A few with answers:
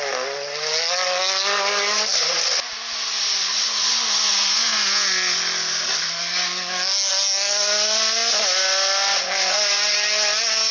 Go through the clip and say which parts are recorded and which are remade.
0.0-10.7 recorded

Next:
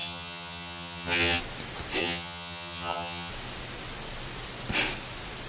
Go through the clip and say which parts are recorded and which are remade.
0.0-1.4 remade; 1.4-2.0 recorded; 2.0-3.3 remade; 3.3-5.5 recorded

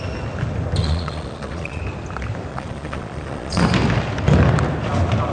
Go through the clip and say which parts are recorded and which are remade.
0.0-0.8 recorded; 0.8-1.8 remade; 1.8-2.5 recorded; 2.5-3.6 remade; 3.6-5.3 recorded

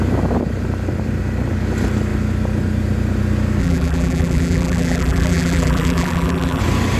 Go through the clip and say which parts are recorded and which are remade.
0.0-3.6 recorded; 3.6-6.6 remade; 6.6-7.0 recorded

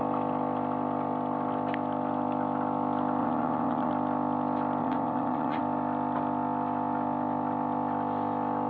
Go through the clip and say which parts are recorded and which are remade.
0.0-3.2 recorded; 3.2-3.9 remade; 3.9-4.8 recorded; 4.8-5.6 remade; 5.6-8.7 recorded

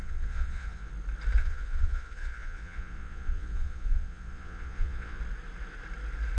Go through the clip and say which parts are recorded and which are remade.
0.0-0.9 remade; 0.9-1.4 recorded; 1.4-5.2 remade; 5.2-6.4 recorded